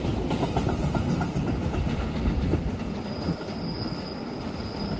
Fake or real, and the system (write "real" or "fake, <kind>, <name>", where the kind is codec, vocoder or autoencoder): real